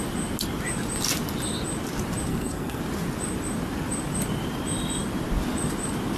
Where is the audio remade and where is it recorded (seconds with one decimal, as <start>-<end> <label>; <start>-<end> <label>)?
0.0-2.3 recorded; 2.3-2.8 remade; 2.8-6.2 recorded